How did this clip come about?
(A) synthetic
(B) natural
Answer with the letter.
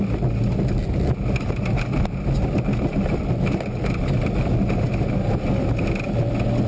B